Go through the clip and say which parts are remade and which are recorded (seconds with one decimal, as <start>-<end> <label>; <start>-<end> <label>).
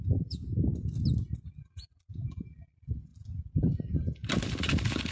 0.0-0.4 remade; 0.4-1.5 recorded; 1.5-4.2 remade; 4.2-5.1 recorded